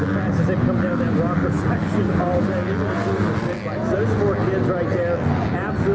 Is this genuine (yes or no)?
yes